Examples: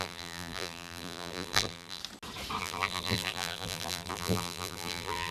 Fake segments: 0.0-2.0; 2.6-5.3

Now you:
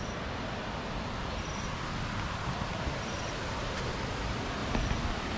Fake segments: 4.6-5.4

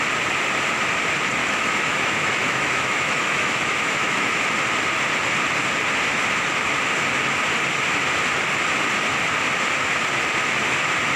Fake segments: 1.4-4.4